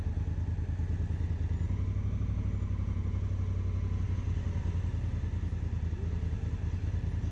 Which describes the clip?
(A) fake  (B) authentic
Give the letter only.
B